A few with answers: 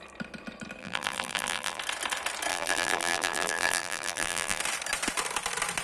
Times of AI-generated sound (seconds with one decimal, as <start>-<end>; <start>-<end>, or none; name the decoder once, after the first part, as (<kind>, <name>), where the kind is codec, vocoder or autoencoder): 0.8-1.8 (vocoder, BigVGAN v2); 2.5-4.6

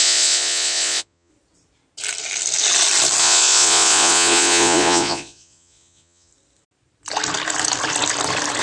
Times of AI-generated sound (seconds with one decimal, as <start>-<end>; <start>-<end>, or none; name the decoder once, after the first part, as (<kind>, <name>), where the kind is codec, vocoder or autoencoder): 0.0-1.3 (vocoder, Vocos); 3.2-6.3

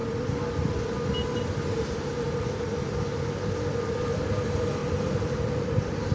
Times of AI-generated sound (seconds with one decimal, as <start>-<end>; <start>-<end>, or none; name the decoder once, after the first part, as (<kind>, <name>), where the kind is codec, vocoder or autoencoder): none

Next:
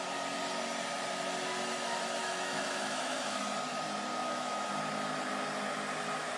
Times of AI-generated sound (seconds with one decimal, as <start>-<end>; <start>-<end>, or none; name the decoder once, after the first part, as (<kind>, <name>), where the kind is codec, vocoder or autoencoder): 2.2-3.4 (autoencoder, DAC-VAE); 4.2-4.7

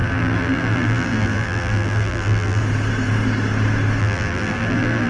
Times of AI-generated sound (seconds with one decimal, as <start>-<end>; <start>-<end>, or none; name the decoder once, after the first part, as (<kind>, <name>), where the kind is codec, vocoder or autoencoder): 0.0-2.6 (vocoder, BigVGAN v2); 4.0-5.1